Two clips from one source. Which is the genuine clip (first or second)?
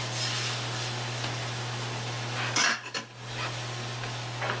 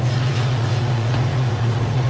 first